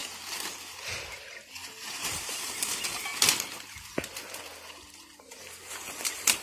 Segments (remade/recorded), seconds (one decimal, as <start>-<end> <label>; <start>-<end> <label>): 0.0-1.3 recorded; 1.3-3.1 remade; 3.1-5.6 recorded; 5.6-6.4 remade